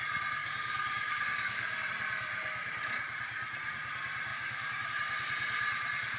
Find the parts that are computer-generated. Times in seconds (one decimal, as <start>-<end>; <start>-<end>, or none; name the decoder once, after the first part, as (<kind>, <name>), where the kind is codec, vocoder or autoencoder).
0.4-1.9 (codec, DAC); 4.3-4.9